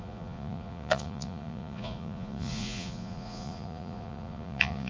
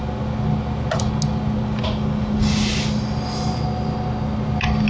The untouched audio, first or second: second